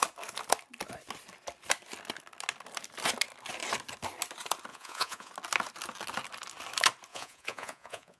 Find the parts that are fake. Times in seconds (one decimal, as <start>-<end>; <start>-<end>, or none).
4.7-5.3; 7.1-8.2